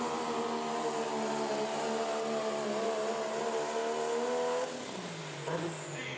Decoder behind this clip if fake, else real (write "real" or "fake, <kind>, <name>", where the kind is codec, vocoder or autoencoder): real